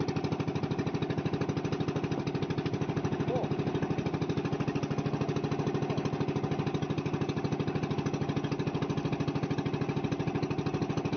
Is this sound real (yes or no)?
yes